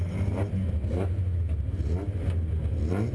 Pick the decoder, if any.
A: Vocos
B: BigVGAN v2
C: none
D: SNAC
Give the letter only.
C